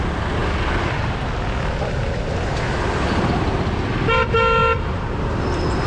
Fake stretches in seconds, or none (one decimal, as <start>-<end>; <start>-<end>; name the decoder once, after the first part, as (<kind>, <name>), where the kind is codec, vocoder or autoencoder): none